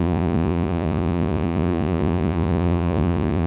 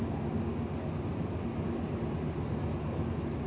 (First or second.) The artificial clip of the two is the first